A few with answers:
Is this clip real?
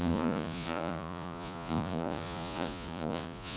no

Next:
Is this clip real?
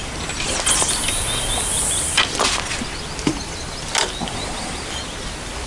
yes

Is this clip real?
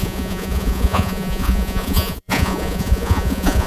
no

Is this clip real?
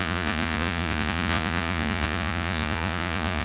no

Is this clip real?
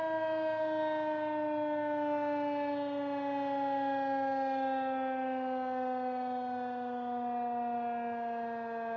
yes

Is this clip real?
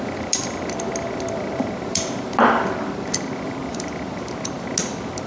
yes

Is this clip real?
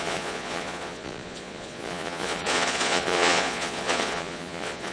no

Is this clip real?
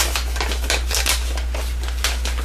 yes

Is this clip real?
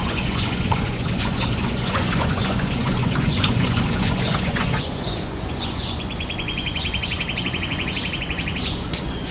no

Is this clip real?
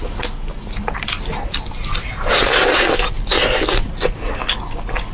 yes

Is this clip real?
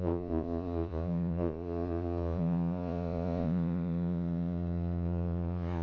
no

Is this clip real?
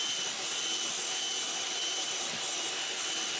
yes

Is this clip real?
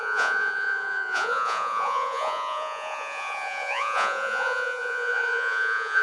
no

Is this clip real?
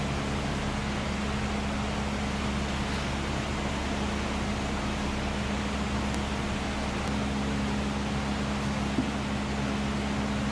yes